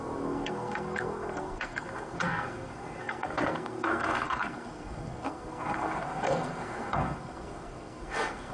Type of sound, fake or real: fake